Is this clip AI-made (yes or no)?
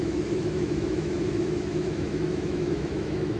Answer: yes